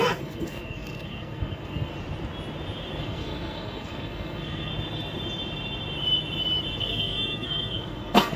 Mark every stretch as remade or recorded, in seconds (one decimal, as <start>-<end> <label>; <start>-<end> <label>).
0.0-1.9 remade; 1.9-2.9 recorded; 2.9-4.7 remade; 4.7-6.8 recorded; 6.8-8.4 remade